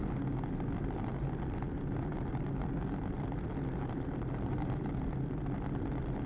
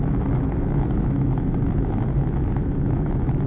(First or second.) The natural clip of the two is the first